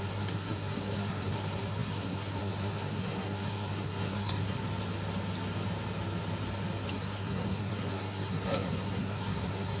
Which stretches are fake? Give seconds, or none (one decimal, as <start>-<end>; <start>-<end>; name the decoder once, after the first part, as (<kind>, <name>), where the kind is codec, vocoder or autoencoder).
0.0-4.6 (codec, SNAC); 6.9-9.8